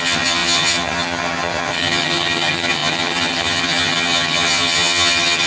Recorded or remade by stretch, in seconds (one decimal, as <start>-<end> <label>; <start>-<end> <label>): 0.0-5.5 remade